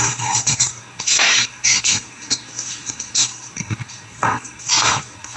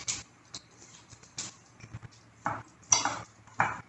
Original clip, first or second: second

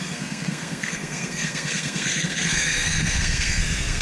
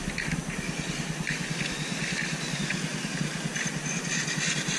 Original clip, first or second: second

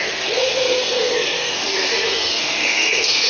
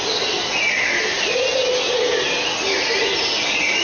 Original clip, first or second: second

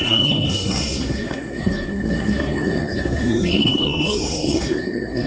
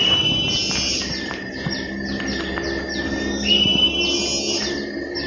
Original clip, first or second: second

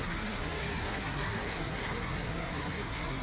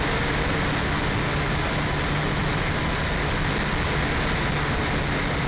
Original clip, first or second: second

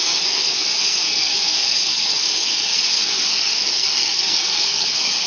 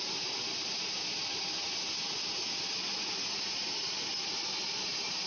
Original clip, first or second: second